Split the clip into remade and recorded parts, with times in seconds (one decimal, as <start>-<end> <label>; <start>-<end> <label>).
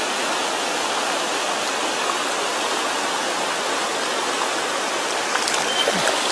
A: 0.0-6.3 recorded